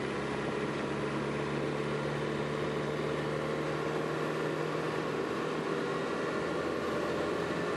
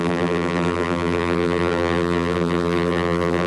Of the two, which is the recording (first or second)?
first